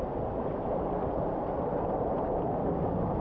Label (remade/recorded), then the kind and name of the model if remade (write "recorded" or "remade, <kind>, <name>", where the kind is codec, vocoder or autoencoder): recorded